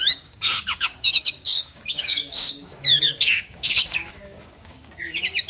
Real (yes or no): no